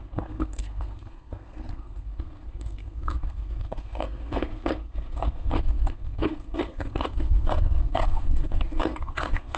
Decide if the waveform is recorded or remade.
remade